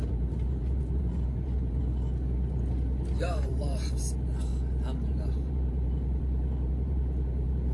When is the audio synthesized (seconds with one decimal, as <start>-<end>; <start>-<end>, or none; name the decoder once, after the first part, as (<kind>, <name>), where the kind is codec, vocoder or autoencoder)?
0.0-1.8 (vocoder, BigVGAN v2); 3.4-4.5; 5.1-7.7